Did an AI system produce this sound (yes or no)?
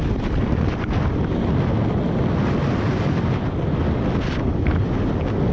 no